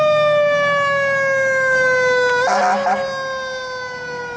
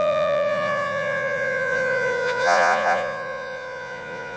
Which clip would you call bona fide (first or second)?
first